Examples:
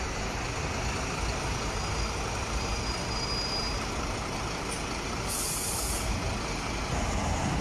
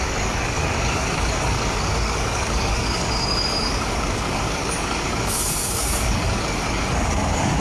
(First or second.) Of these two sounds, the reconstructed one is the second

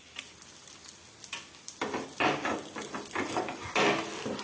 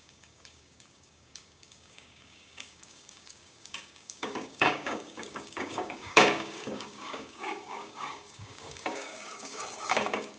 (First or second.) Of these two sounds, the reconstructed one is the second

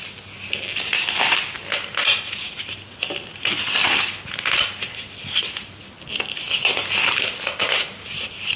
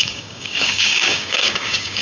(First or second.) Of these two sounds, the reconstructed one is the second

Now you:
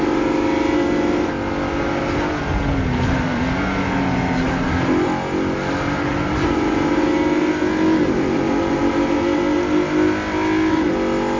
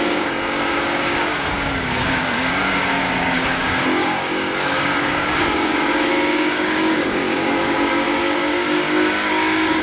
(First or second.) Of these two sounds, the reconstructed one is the second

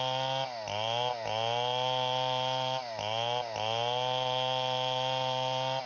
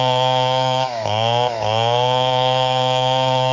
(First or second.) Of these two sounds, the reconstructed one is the second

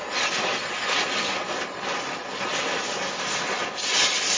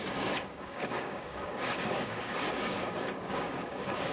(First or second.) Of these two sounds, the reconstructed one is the second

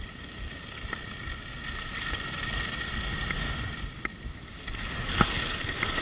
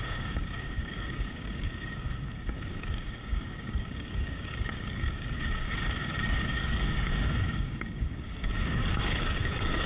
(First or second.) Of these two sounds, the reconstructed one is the second